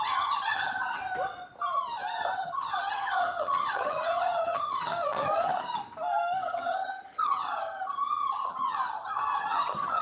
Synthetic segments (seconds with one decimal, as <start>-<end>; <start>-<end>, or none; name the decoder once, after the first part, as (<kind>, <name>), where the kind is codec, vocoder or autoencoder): 0.0-1.0 (vocoder, HiFi-GAN); 2.1-5.8; 6.4-10.0